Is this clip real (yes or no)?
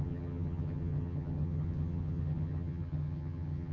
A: no